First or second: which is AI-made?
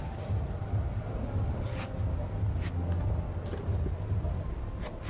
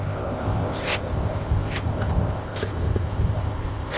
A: second